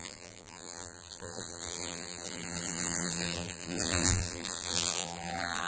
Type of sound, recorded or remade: remade